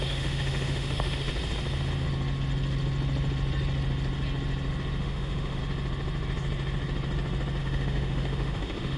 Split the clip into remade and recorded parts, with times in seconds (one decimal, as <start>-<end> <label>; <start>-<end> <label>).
0.0-1.3 remade; 1.3-5.0 recorded; 5.0-5.6 remade; 5.6-7.6 recorded; 7.6-9.0 remade